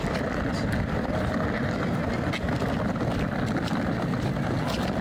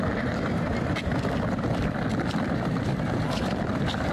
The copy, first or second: second